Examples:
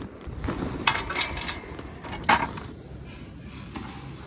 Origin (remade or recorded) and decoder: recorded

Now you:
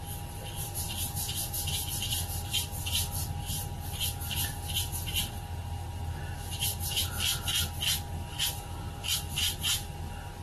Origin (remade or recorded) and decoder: recorded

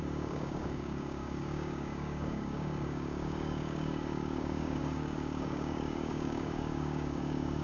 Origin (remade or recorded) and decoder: remade, codec, DAC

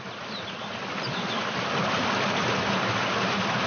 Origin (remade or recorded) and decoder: recorded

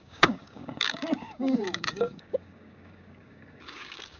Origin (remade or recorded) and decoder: remade, codec, DAC